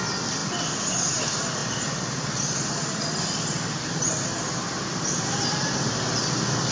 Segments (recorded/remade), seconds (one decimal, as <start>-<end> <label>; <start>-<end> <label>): 0.0-6.7 recorded